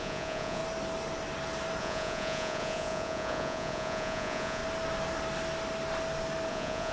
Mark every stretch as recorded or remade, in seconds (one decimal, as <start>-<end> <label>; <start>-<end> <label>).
0.0-0.6 remade; 0.6-1.8 recorded; 1.8-4.6 remade; 4.6-6.5 recorded; 6.5-6.9 remade